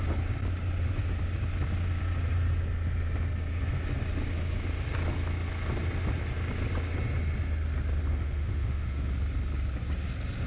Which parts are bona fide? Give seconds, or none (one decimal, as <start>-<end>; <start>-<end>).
0.0-8.1; 9.1-10.5